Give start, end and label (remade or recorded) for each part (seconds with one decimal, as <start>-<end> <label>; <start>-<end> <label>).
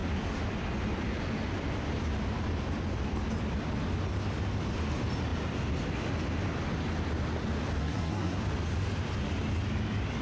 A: 0.0-7.8 recorded; 7.8-8.4 remade; 8.4-10.2 recorded